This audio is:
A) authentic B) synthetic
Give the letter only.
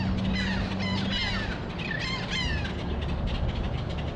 A